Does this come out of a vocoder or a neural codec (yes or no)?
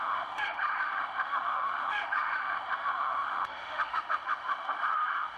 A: yes